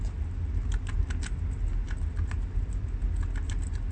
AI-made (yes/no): no